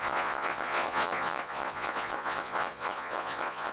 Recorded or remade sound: remade